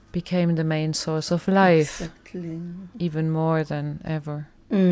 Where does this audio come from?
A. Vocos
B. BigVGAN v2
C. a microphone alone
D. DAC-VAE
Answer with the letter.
C